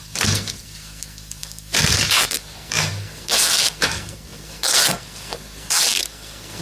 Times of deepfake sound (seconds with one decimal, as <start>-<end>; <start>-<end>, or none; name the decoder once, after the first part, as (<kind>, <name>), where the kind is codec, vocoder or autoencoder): 0.0-6.6 (codec, SNAC)